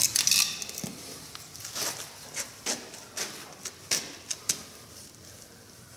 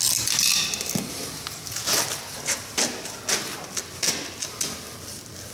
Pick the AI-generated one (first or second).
first